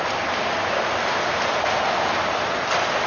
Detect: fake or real real